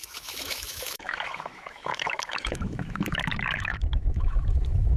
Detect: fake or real fake